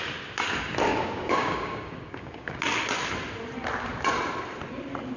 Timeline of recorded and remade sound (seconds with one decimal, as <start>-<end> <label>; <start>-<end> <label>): 0.0-0.9 recorded; 0.9-2.6 remade; 2.6-5.2 recorded